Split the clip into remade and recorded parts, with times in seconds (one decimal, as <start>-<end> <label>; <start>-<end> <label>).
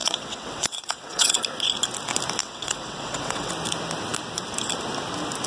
0.0-1.4 remade; 1.4-2.4 recorded; 2.4-3.5 remade; 3.5-5.5 recorded